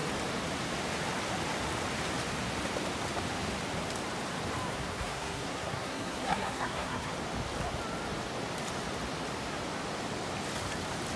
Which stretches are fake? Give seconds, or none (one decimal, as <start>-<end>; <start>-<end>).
4.7-7.1